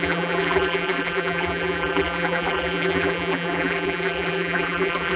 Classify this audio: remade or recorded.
remade